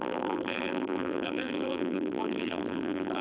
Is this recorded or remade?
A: remade